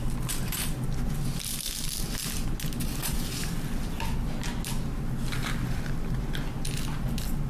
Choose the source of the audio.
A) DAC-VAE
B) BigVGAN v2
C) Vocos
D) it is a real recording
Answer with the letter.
D